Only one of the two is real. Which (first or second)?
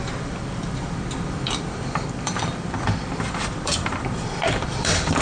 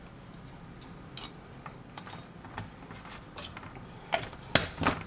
second